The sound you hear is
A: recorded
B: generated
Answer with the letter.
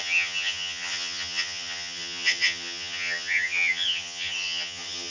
B